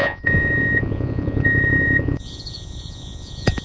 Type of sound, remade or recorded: remade